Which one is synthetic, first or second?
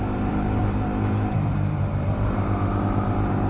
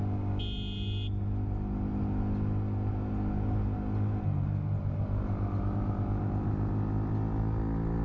first